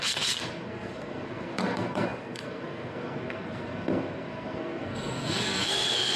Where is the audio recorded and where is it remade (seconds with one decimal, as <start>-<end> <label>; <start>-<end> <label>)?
0.0-6.2 remade